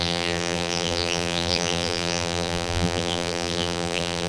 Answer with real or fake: fake